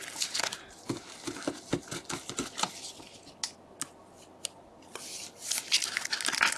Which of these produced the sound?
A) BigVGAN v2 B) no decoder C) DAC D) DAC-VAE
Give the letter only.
B